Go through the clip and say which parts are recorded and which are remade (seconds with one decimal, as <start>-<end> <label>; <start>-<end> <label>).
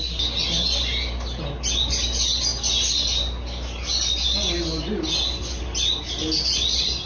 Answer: 0.0-7.1 recorded